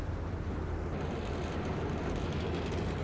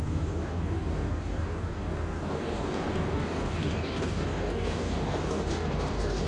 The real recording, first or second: first